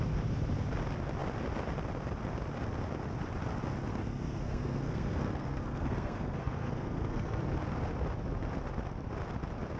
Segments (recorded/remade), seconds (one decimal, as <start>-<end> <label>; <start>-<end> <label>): 0.0-3.9 recorded; 3.9-7.4 remade; 7.4-9.8 recorded